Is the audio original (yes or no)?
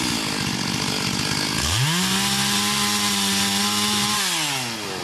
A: yes